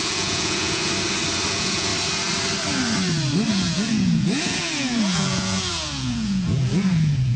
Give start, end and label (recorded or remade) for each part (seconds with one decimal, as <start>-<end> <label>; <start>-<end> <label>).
0.0-0.8 remade; 0.8-1.5 recorded; 1.5-1.9 remade; 1.9-3.5 recorded; 3.5-7.4 remade